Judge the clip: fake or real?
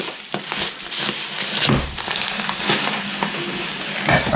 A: real